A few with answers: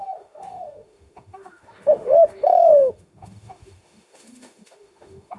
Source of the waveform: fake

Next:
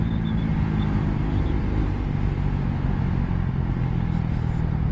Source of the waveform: real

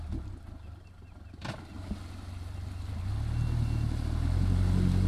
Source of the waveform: real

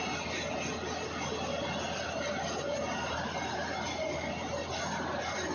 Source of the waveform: real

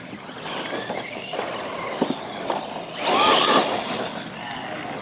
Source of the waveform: real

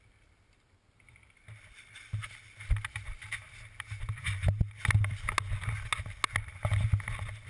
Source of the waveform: real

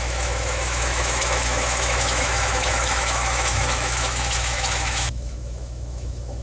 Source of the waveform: fake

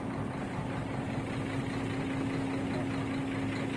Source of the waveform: real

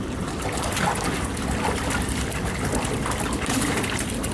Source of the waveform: real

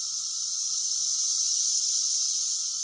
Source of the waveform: real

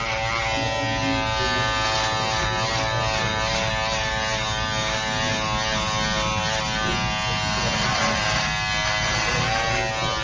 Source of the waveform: real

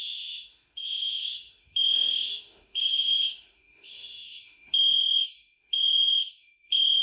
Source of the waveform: fake